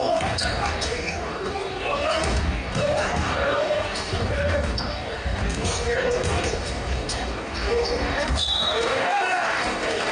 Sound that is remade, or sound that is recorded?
remade